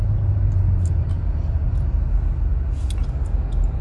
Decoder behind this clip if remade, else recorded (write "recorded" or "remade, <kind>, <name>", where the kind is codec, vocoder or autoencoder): recorded